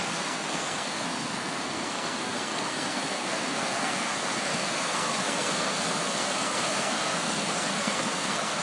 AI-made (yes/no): yes